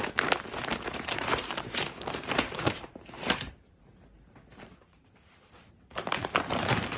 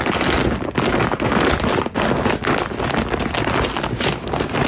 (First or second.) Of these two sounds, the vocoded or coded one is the first